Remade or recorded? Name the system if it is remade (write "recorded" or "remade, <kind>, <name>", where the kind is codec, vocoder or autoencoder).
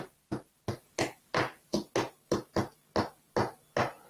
recorded